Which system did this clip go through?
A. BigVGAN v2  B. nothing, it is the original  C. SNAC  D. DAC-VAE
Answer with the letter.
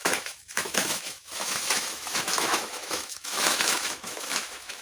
D